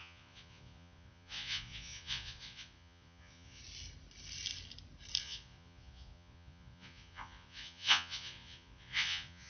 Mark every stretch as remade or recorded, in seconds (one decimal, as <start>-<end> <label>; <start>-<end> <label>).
0.0-3.6 remade; 3.6-5.2 recorded; 5.2-9.5 remade

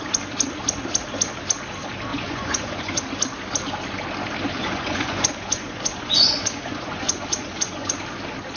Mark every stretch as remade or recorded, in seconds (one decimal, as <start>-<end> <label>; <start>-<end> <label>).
0.0-2.1 recorded; 2.1-3.0 remade; 3.0-4.6 recorded; 4.6-7.9 remade; 7.9-8.6 recorded

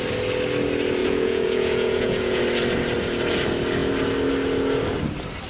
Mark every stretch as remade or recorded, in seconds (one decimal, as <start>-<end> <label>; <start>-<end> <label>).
0.0-1.0 recorded; 1.0-2.4 remade; 2.4-5.5 recorded

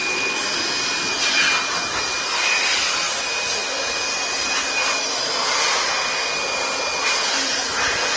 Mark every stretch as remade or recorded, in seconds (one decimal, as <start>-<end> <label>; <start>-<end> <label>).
0.0-8.2 recorded

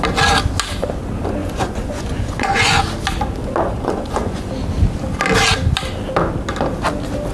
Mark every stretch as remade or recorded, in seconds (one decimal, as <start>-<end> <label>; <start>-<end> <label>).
0.0-1.4 recorded; 1.4-2.8 remade; 2.8-3.4 recorded; 3.4-4.5 remade; 4.5-7.3 recorded

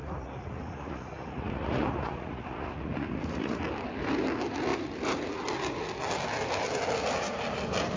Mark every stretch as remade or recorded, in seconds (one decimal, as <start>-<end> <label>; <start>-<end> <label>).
0.0-3.6 remade; 3.6-8.0 recorded